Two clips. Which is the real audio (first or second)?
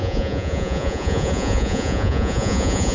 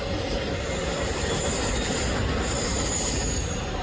second